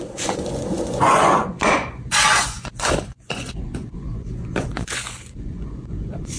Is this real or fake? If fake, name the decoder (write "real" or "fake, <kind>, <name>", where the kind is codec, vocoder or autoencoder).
fake, vocoder, Vocos